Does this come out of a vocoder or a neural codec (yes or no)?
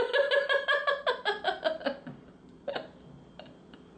no